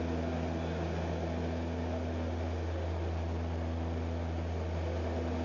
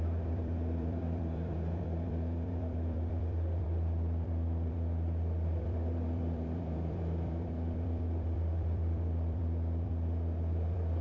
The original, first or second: first